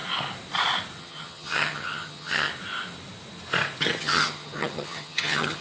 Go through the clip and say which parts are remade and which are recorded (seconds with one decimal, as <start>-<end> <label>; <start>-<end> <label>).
0.0-1.0 recorded; 1.0-2.5 remade; 2.5-4.0 recorded; 4.0-5.6 remade